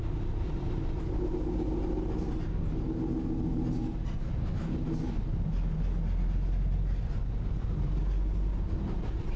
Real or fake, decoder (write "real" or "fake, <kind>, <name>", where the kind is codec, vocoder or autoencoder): real